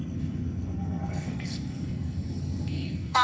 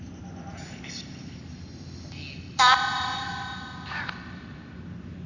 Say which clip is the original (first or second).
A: second